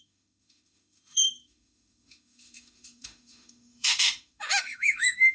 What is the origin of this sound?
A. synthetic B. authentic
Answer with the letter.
A